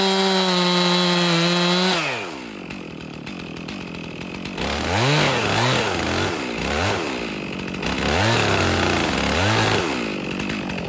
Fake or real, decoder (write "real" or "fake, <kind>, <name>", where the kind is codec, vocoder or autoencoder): real